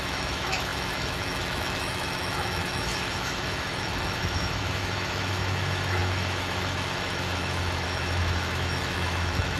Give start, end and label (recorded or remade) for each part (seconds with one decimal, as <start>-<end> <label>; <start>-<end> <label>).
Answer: 0.0-9.6 remade